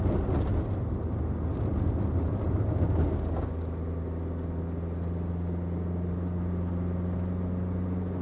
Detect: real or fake real